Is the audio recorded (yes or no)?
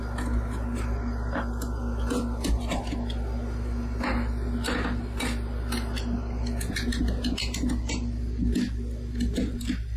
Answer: yes